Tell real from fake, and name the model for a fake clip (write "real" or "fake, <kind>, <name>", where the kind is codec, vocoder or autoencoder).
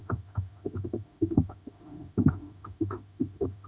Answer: fake, autoencoder, DAC-VAE